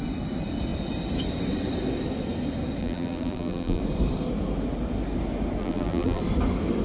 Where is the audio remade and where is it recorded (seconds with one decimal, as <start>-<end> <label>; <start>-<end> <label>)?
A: 0.0-2.8 recorded; 2.8-3.8 remade; 3.8-5.6 recorded; 5.6-6.2 remade; 6.2-6.8 recorded